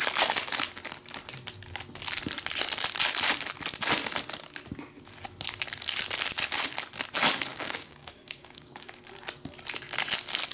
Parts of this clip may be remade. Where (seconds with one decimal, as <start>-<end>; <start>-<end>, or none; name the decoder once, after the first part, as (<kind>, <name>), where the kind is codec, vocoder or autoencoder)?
7.5-8.9 (codec, DAC)